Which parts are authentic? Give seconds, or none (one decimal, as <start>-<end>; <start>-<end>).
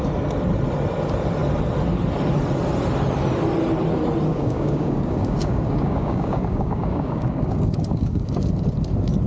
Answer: 0.0-4.3; 8.3-9.3